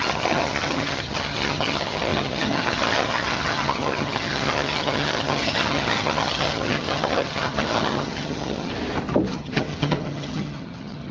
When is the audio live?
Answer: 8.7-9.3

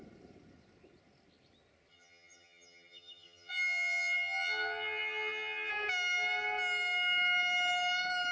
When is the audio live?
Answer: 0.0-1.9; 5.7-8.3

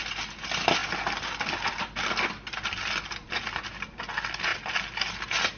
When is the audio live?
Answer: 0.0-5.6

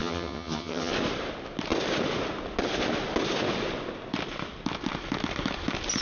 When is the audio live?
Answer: 0.9-6.0

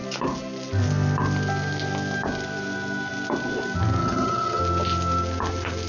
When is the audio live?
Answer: 0.0-4.0; 4.6-5.9

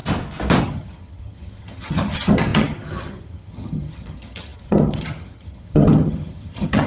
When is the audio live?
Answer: 0.0-0.6